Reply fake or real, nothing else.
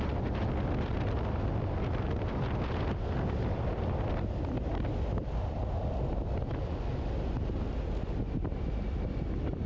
real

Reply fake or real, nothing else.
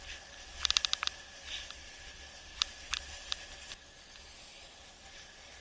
real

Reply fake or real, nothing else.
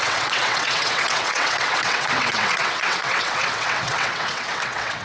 fake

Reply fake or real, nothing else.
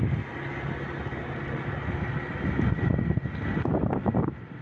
real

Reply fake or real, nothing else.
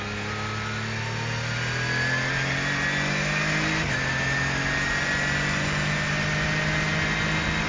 real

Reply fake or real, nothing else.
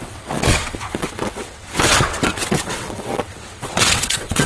fake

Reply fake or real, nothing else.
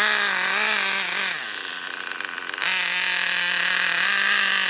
real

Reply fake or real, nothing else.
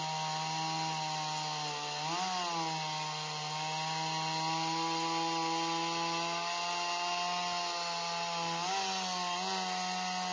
real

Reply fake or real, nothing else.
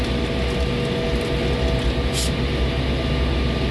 real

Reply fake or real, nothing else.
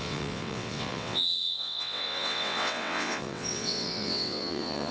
fake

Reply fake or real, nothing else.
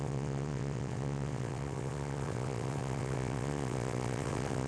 fake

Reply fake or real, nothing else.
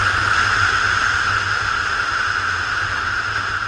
real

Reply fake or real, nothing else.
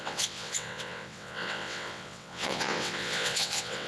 fake